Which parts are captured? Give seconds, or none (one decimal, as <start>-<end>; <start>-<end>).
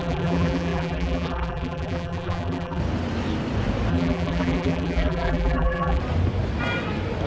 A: 2.8-3.9; 6.0-7.3